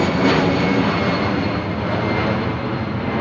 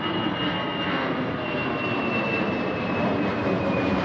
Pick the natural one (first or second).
first